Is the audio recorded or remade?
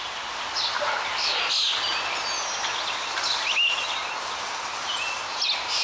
recorded